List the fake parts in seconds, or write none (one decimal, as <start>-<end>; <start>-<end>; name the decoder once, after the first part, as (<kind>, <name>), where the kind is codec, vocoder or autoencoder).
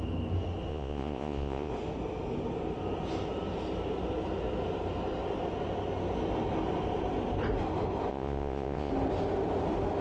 0.7-1.7 (vocoder, Vocos); 8.1-8.9